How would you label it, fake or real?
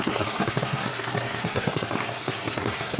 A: fake